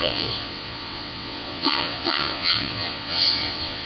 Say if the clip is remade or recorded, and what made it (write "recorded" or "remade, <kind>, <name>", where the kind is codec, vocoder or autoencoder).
remade, vocoder, WaveNeXt